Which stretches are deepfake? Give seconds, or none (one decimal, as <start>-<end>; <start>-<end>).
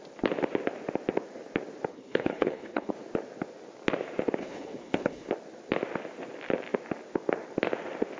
1.9-2.9; 4.4-5.3